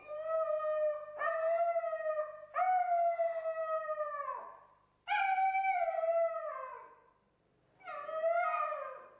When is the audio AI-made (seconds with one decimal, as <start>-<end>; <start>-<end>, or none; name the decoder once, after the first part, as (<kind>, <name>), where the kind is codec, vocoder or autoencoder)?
3.6-6.1 (vocoder, BigVGAN v2)